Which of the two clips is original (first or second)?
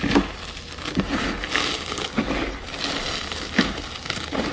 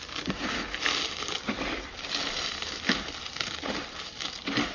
first